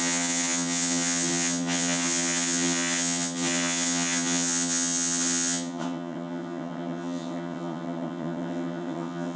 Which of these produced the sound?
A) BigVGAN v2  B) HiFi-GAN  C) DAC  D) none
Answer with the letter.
B